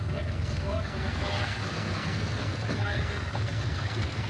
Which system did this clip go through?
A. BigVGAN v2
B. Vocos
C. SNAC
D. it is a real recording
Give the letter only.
C